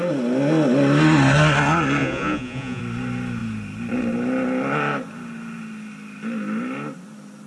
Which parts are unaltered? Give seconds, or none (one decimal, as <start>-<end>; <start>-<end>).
0.0-2.0; 2.8-7.5